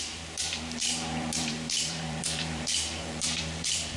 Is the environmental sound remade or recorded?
remade